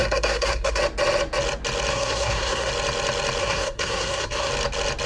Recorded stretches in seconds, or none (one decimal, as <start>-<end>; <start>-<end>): 0.8-1.9; 2.7-3.4; 4.5-5.1